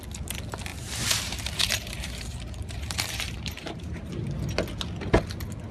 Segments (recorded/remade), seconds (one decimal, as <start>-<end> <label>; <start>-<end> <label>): 0.0-0.7 recorded; 0.7-4.1 remade; 4.1-5.7 recorded